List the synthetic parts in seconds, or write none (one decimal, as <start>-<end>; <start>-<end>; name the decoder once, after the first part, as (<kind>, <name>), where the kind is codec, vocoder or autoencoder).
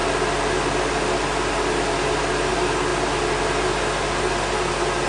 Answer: none